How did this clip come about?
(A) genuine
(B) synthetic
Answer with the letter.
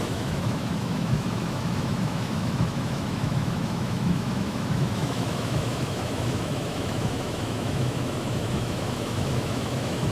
B